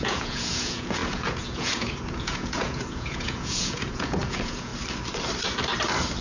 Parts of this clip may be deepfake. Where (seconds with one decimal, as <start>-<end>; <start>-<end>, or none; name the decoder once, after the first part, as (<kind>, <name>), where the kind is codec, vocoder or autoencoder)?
0.0-4.7 (vocoder, Vocos)